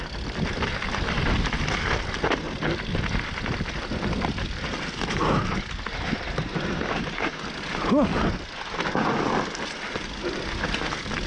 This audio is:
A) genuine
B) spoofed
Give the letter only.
A